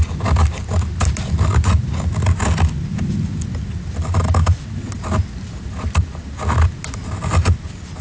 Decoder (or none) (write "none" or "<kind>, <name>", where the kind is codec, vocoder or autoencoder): none